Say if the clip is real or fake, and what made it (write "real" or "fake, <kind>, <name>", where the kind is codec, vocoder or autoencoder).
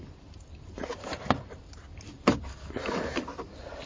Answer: real